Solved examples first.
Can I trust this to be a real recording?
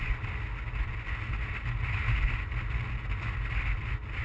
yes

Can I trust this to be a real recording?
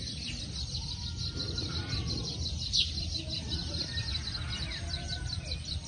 yes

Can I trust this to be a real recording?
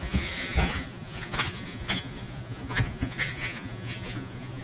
no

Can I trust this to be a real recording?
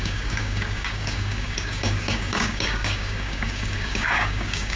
no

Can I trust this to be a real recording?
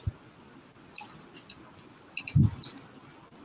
yes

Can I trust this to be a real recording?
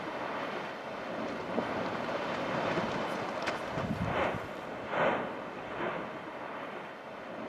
yes